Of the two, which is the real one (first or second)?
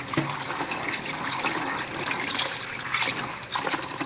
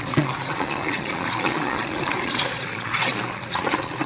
first